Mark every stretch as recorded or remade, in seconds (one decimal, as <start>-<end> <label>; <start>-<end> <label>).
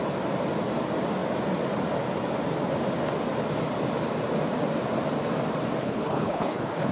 0.0-5.8 recorded; 5.8-6.9 remade